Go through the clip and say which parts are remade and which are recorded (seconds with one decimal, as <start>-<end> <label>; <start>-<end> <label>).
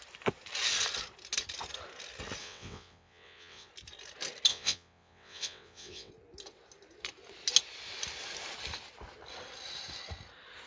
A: 0.0-2.4 recorded; 2.4-3.7 remade; 3.7-4.5 recorded; 4.5-6.1 remade; 6.1-10.7 recorded